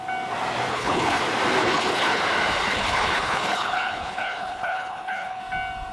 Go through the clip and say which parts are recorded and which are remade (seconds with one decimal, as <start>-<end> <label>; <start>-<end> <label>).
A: 0.0-0.7 recorded; 0.7-1.2 remade; 1.2-1.6 recorded; 1.6-2.2 remade; 2.2-2.7 recorded; 2.7-5.4 remade; 5.4-5.9 recorded